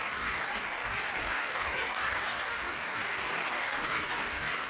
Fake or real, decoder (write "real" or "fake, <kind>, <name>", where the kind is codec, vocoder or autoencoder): fake, codec, DAC